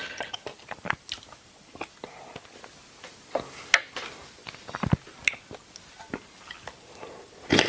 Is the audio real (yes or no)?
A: yes